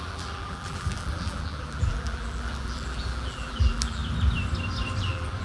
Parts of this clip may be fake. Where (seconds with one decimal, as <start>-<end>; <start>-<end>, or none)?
0.0-4.0; 5.0-5.4